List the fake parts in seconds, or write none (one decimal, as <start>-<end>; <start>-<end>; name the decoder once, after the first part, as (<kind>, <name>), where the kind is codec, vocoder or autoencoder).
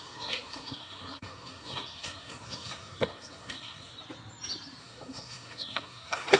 0.0-3.9 (codec, SNAC); 4.8-6.4